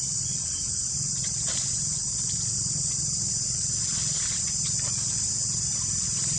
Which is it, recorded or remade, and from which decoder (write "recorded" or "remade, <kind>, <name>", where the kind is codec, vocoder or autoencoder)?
recorded